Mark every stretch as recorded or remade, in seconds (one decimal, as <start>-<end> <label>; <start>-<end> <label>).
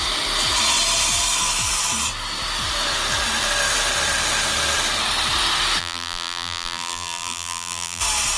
0.0-5.8 recorded; 5.8-8.0 remade; 8.0-8.4 recorded